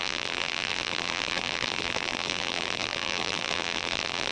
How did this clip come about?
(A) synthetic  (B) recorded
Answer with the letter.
A